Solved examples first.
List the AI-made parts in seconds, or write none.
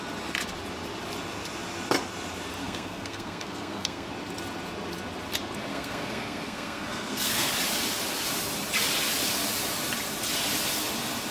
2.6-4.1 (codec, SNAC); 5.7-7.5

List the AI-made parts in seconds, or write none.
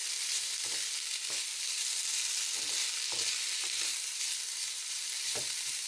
3.4-3.9 (vocoder, BigVGAN v2); 4.9-5.9